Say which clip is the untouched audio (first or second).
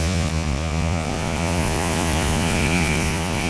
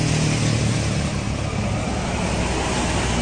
second